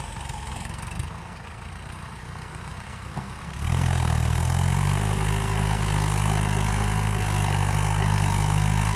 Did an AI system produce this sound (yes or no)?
yes